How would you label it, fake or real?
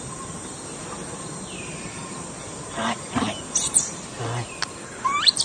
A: real